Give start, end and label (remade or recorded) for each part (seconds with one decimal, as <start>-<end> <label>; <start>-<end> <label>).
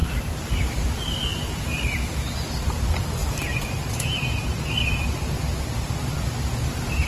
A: 0.0-0.6 remade; 0.6-1.3 recorded; 1.3-2.5 remade; 2.5-3.2 recorded; 3.2-5.6 remade; 5.6-7.1 recorded